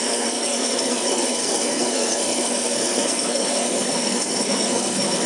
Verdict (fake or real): fake